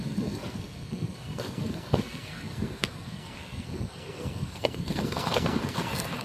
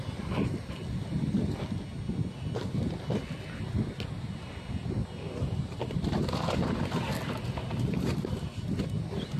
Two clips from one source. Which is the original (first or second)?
second